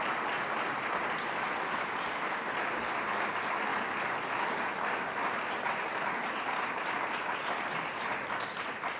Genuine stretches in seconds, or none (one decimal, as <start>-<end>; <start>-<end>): 0.0-9.0